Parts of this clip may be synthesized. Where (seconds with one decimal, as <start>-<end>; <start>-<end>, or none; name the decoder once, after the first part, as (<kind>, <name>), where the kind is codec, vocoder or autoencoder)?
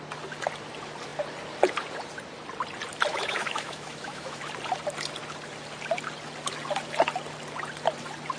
3.1-4.4 (autoencoder, DAC-VAE)